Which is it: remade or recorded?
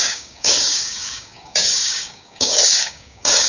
remade